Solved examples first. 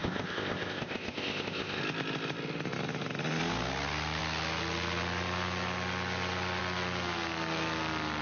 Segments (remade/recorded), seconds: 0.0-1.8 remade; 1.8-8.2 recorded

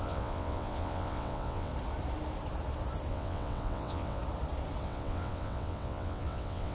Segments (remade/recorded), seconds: 0.0-1.7 remade; 1.7-3.1 recorded; 3.1-4.2 remade; 4.2-4.8 recorded; 4.8-6.7 remade